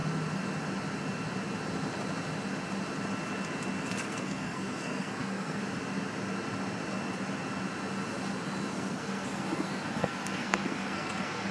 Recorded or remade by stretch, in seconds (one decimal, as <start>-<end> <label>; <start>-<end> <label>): 0.0-3.8 recorded; 3.8-5.6 remade; 5.6-8.7 recorded; 8.7-11.5 remade